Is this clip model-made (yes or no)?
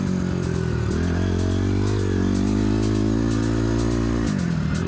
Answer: no